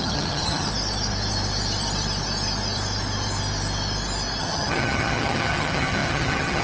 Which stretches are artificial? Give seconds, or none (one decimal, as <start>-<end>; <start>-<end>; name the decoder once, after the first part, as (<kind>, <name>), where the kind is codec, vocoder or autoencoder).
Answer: 0.0-0.7 (vocoder, HiFi-GAN); 4.4-6.6